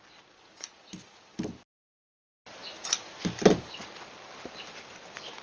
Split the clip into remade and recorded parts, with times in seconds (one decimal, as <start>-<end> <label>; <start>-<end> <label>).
0.0-5.4 recorded